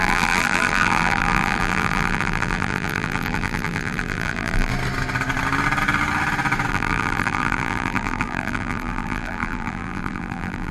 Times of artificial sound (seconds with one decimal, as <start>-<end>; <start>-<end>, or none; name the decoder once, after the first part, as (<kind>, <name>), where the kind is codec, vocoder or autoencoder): 0.0-4.7 (vocoder, BigVGAN v2); 6.7-10.7